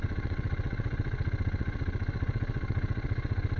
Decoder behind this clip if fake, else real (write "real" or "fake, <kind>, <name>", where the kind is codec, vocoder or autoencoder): fake, vocoder, WaveNeXt